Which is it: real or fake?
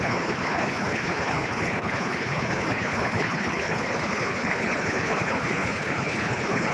fake